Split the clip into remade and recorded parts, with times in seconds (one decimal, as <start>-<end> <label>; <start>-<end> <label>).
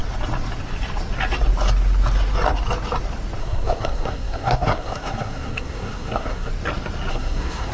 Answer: 0.0-3.4 recorded; 3.4-6.5 remade; 6.5-7.1 recorded; 7.1-7.7 remade